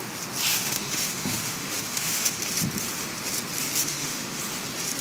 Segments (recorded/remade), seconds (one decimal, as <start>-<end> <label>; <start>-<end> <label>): 0.0-0.5 recorded; 0.5-2.4 remade; 2.4-3.8 recorded; 3.8-4.4 remade; 4.4-5.0 recorded